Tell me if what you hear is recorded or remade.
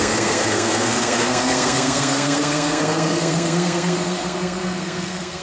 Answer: remade